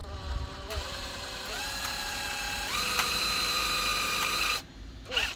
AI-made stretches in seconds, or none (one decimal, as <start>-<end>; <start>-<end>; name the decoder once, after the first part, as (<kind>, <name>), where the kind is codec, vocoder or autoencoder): 0.0-5.4 (vocoder, BigVGAN v2)